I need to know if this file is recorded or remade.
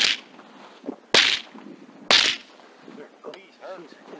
recorded